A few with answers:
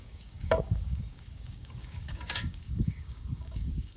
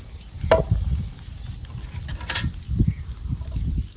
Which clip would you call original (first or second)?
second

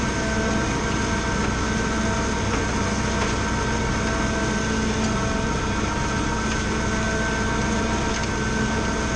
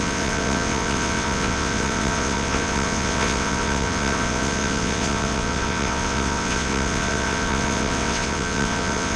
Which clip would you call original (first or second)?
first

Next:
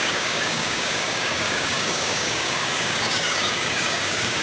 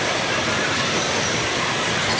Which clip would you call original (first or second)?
second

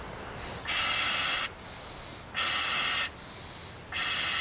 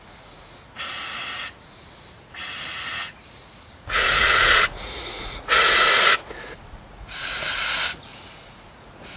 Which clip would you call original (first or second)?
first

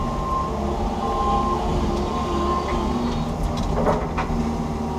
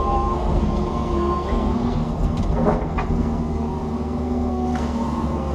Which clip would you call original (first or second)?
first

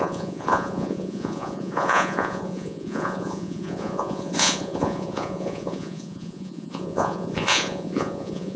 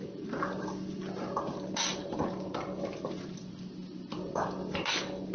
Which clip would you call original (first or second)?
second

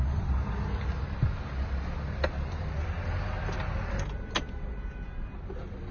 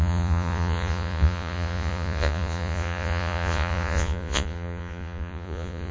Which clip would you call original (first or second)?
first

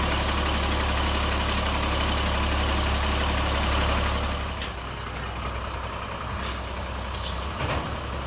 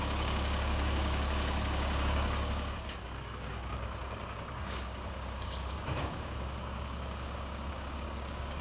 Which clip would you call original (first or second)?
first